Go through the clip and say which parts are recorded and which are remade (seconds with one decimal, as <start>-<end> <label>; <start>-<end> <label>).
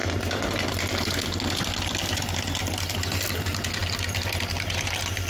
0.0-5.3 recorded